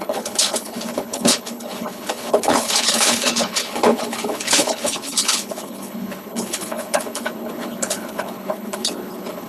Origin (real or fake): fake